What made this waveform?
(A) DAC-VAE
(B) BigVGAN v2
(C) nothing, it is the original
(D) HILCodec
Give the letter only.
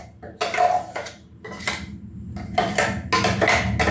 C